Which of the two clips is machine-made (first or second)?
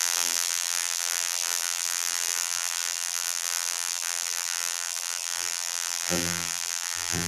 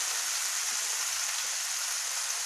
first